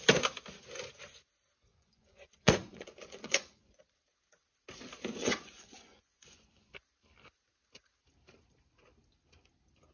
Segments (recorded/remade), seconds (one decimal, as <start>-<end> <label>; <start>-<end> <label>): 0.0-1.7 recorded; 1.7-3.8 remade; 3.8-5.2 recorded; 5.2-6.7 remade; 6.7-9.9 recorded